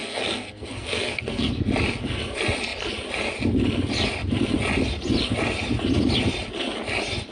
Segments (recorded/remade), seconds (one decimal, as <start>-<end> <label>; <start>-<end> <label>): 0.0-1.5 remade; 1.5-7.3 recorded